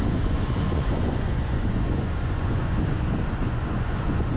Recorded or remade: remade